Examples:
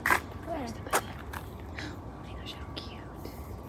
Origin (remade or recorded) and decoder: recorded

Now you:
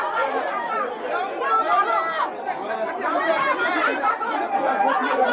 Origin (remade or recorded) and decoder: recorded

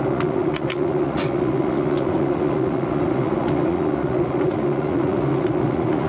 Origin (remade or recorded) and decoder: remade, vocoder, Vocos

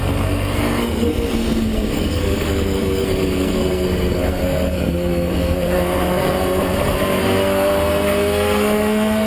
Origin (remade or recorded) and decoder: remade, codec, SNAC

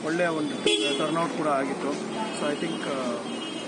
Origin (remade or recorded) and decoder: recorded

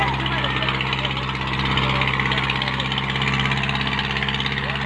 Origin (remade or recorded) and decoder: recorded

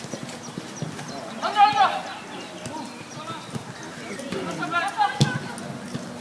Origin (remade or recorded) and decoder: recorded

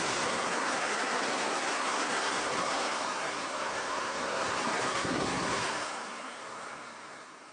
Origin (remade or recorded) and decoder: remade, codec, SNAC